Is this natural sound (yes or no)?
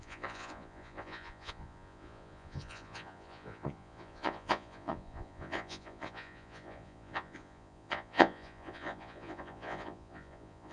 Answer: no